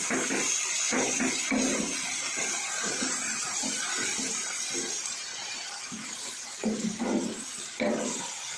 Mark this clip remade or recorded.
recorded